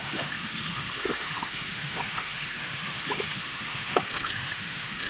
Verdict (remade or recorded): remade